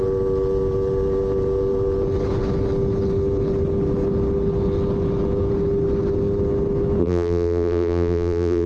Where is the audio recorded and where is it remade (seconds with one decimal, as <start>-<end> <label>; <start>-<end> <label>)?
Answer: 0.0-7.0 recorded; 7.0-8.7 remade

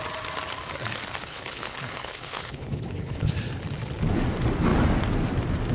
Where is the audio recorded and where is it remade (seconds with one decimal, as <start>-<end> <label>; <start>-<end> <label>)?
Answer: 0.0-1.2 recorded; 1.2-3.3 remade; 3.3-5.7 recorded

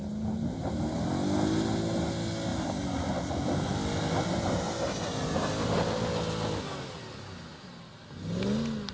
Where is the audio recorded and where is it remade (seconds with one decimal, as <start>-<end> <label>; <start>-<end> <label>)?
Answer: 0.0-2.5 recorded; 2.5-4.8 remade; 4.8-8.9 recorded